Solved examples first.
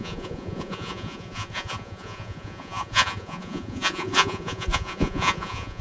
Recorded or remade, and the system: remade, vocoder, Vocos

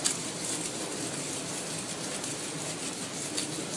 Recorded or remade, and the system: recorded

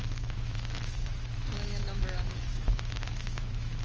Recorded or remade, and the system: remade, autoencoder, DAC-VAE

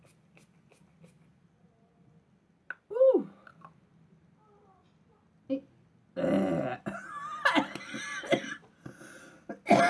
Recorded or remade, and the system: recorded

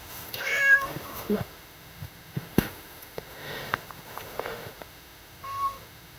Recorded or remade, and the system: remade, autoencoder, DAC-VAE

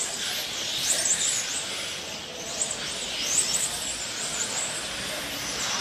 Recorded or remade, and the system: recorded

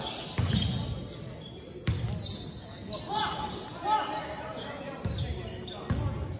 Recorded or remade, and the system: recorded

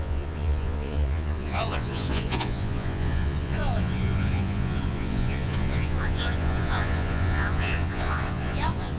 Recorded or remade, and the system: remade, vocoder, Vocos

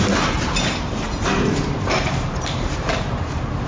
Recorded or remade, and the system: remade, vocoder, BigVGAN v2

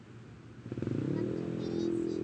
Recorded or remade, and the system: recorded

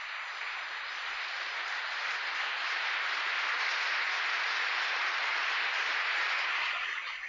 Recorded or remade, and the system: recorded